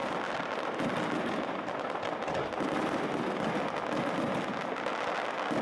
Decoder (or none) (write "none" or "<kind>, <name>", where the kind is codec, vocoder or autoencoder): none